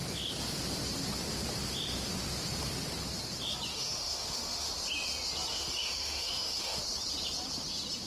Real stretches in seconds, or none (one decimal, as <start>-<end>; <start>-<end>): 0.0-3.7; 4.7-5.5; 6.8-8.1